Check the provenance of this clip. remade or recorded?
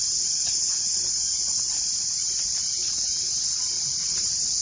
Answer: recorded